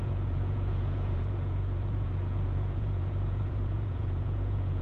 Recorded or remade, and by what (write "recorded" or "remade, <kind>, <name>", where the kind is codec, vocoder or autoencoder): remade, vocoder, Vocos